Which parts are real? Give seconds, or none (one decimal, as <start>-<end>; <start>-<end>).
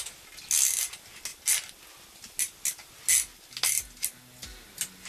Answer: 0.0-5.1